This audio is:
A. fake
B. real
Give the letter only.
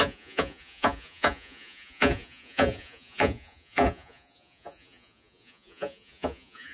A